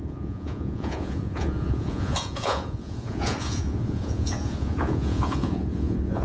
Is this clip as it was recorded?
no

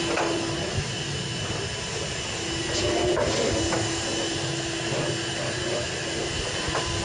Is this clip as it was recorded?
yes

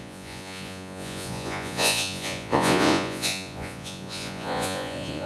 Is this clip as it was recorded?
no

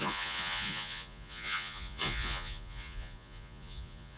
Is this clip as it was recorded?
no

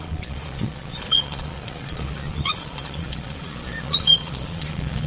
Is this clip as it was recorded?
no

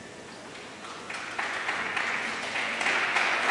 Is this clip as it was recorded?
no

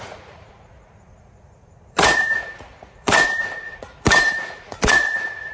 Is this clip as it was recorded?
no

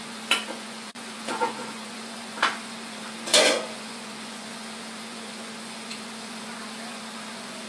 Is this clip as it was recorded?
no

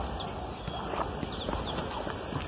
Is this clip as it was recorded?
yes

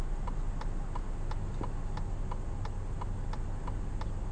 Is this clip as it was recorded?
yes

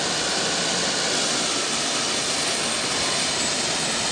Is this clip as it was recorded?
yes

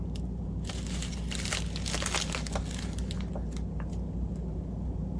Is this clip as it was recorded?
yes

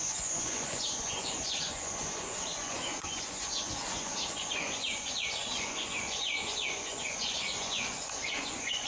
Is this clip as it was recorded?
no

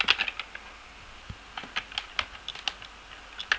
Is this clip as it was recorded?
yes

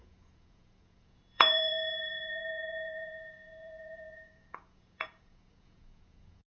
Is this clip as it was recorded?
no